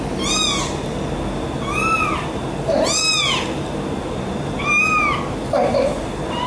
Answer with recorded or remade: recorded